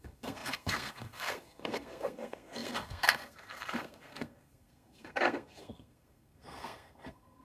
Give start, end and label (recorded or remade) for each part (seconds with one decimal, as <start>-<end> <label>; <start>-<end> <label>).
0.0-7.4 remade